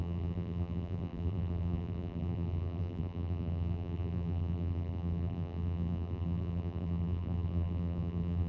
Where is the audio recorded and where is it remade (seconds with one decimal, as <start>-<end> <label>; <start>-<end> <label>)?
0.0-8.5 remade